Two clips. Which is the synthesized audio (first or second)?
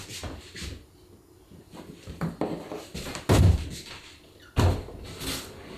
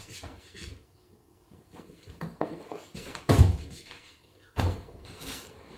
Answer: second